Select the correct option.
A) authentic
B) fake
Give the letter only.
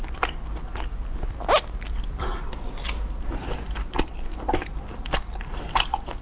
A